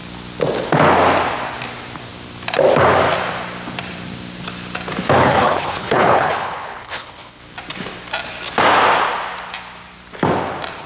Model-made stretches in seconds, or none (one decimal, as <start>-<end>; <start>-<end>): 5.2-7.4